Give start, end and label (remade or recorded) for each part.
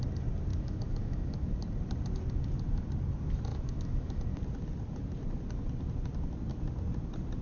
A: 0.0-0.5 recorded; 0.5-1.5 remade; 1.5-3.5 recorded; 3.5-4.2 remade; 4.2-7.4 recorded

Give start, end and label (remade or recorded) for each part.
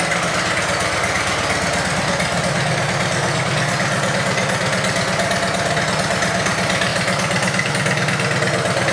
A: 0.0-8.9 recorded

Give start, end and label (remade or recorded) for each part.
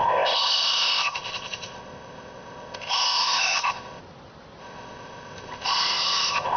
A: 0.0-4.0 remade; 4.0-4.6 recorded; 4.6-6.6 remade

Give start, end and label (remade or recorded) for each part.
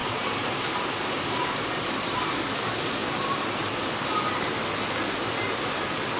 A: 0.0-2.2 remade; 2.2-3.0 recorded; 3.0-3.8 remade; 3.8-6.2 recorded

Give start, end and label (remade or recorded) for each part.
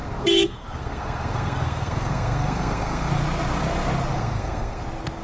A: 0.0-3.1 remade; 3.1-4.1 recorded; 4.1-4.8 remade; 4.8-5.2 recorded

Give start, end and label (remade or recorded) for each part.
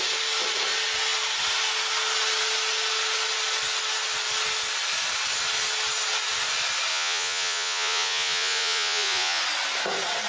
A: 0.0-6.9 recorded; 6.9-9.4 remade; 9.4-10.3 recorded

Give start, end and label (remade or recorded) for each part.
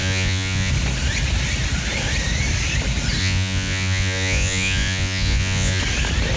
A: 0.0-0.7 remade; 0.7-3.2 recorded; 3.2-5.8 remade; 5.8-6.4 recorded